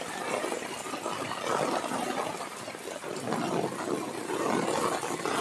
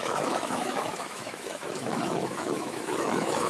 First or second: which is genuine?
first